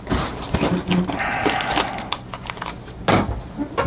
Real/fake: real